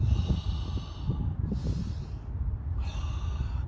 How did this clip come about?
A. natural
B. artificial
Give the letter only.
A